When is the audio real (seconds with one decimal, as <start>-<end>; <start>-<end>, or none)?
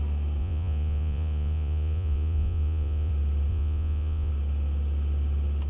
0.0-0.4; 3.1-3.5; 4.3-5.7